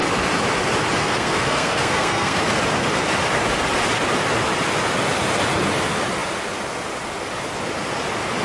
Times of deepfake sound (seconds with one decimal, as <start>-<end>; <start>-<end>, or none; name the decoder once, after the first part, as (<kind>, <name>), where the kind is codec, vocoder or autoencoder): 1.0-2.4 (codec, SNAC)